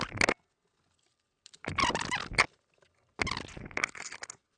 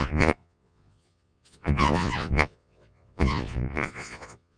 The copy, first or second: second